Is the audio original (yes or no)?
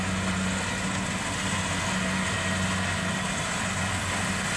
yes